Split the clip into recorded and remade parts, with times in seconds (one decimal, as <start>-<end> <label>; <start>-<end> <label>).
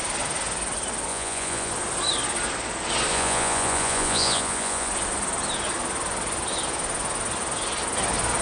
0.0-1.1 recorded; 1.1-1.7 remade; 1.7-3.1 recorded; 3.1-4.9 remade; 4.9-8.4 recorded